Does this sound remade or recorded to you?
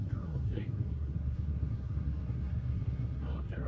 remade